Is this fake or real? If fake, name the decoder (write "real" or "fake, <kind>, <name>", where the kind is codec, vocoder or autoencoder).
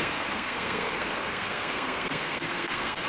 fake, codec, SNAC